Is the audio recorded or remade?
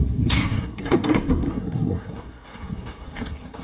remade